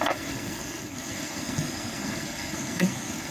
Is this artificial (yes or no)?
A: yes